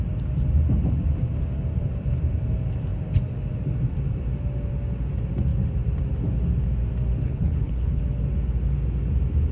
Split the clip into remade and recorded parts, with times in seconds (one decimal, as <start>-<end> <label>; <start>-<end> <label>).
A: 0.0-7.2 recorded; 7.2-8.0 remade; 8.0-9.5 recorded